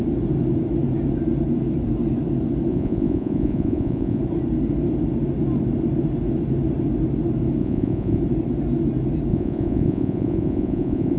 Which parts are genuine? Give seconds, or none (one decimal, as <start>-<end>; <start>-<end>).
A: 0.0-2.7; 4.2-7.6; 8.2-9.3